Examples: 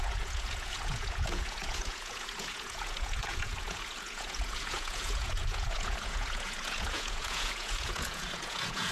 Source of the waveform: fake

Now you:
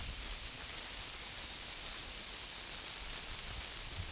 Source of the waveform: real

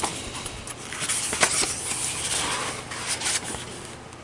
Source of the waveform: real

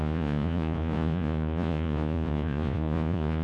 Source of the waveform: fake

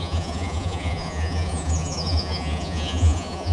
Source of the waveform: fake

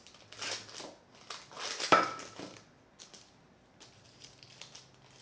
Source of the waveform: real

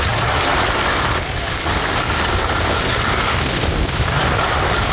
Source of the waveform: real